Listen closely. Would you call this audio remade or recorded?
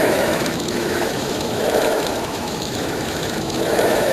remade